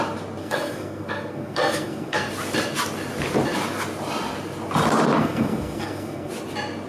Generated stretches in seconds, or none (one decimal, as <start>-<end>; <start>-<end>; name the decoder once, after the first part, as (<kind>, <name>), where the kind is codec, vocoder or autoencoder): 0.4-2.3 (codec, SNAC); 5.2-6.3